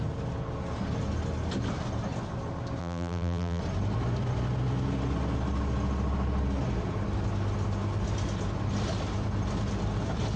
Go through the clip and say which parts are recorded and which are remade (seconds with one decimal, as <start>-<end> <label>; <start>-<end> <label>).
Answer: 0.0-2.8 recorded; 2.8-3.6 remade; 3.6-10.4 recorded